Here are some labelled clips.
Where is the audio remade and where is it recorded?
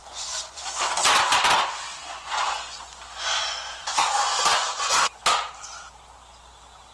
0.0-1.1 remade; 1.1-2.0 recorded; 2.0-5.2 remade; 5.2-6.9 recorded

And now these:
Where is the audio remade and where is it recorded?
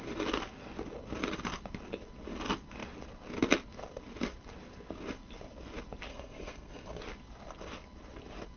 0.0-6.1 recorded; 6.1-7.0 remade; 7.0-8.6 recorded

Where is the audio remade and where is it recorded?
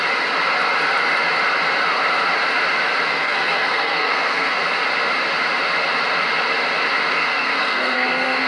0.0-3.1 recorded; 3.1-4.6 remade; 4.6-7.1 recorded; 7.1-8.5 remade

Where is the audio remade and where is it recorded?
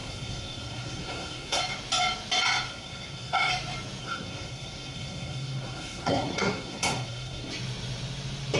0.0-1.6 remade; 1.6-2.7 recorded; 2.7-3.5 remade; 3.5-4.0 recorded; 4.0-7.5 remade; 7.5-8.6 recorded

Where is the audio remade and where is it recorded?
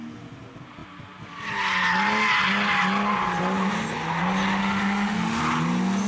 0.0-4.6 recorded; 4.6-5.4 remade; 5.4-6.1 recorded